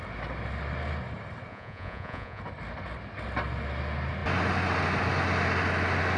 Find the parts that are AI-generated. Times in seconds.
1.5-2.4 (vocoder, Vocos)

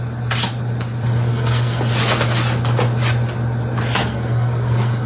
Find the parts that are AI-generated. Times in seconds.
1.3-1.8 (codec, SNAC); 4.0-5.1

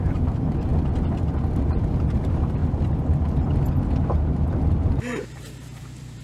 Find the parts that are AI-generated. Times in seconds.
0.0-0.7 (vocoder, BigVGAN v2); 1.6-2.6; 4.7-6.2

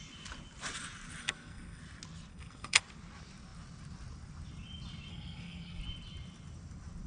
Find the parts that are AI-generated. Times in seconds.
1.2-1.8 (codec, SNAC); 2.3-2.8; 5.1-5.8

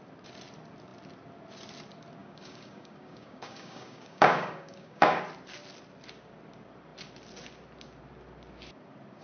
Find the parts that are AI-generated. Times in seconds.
2.2-5.2 (codec, DAC)

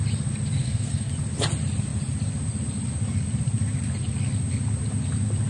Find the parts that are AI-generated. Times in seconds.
0.6-1.1 (codec, SNAC)

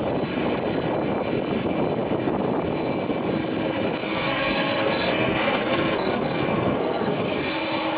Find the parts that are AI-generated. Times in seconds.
4.0-7.6 (codec, SNAC)